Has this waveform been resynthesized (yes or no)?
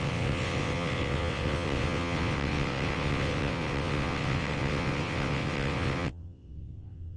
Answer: yes